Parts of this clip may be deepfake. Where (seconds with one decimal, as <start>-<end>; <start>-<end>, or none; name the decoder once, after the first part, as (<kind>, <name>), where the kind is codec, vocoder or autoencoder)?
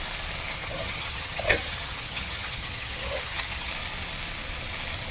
0.6-3.7 (vocoder, HiFi-GAN)